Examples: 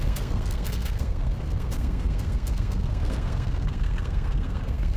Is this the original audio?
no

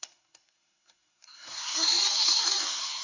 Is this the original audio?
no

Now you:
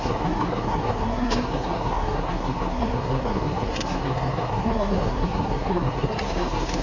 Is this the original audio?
no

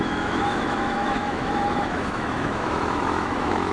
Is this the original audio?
no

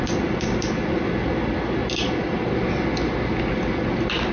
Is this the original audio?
yes